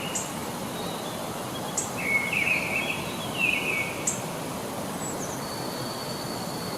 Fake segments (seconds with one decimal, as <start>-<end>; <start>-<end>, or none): none